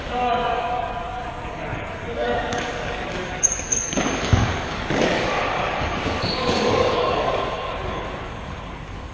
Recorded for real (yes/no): no